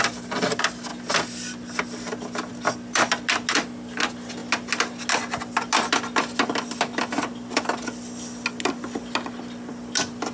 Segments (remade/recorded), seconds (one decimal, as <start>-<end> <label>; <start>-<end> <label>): 0.0-10.3 recorded